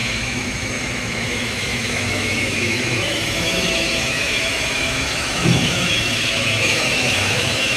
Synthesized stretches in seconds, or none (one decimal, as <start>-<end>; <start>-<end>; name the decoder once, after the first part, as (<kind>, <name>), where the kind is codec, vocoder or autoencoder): 0.0-7.8 (autoencoder, DAC-VAE)

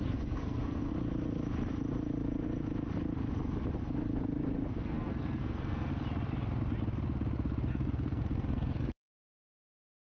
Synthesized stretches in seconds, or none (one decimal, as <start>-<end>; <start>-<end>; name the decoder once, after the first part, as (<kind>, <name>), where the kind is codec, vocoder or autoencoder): 0.0-0.9 (codec, SNAC); 4.7-5.9; 7.7-10.0